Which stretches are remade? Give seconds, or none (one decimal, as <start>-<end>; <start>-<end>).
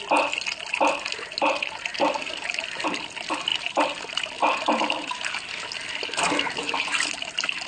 none